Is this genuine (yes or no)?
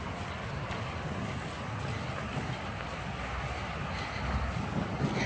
yes